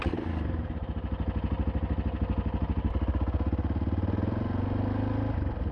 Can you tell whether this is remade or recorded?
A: recorded